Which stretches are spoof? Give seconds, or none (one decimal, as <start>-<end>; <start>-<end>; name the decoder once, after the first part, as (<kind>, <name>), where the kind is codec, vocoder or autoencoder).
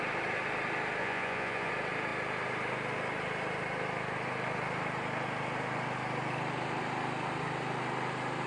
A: 1.0-1.7 (vocoder, Vocos)